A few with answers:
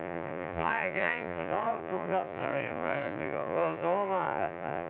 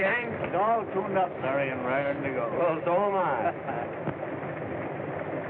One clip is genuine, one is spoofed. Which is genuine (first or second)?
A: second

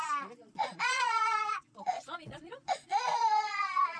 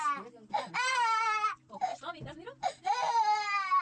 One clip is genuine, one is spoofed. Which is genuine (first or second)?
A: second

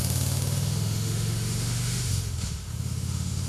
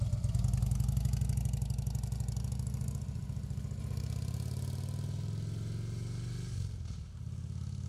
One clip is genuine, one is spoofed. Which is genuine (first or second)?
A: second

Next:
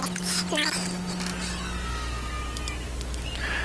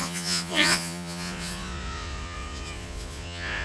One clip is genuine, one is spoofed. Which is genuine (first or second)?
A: first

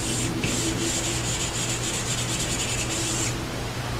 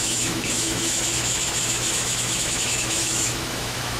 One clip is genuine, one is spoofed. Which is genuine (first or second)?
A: first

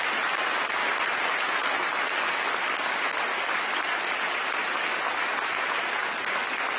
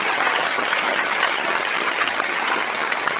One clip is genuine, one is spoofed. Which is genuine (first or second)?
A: first